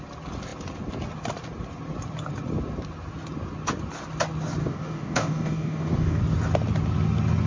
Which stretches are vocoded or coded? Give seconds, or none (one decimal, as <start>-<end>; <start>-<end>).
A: 4.6-6.2